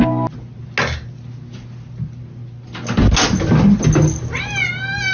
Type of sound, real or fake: real